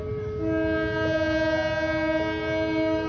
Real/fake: real